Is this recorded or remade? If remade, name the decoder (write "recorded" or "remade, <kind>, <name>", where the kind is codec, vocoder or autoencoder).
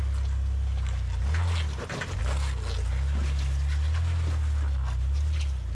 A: recorded